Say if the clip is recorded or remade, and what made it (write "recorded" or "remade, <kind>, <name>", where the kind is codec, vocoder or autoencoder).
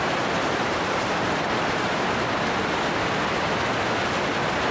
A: recorded